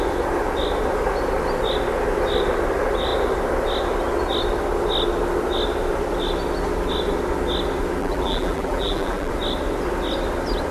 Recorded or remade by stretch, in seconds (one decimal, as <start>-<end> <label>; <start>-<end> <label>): 0.0-8.0 recorded; 8.0-9.3 remade; 9.3-10.7 recorded